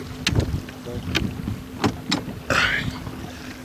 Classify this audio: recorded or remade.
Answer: recorded